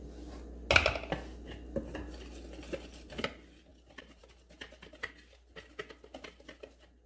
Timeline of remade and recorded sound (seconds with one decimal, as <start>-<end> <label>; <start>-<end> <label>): 0.0-7.1 recorded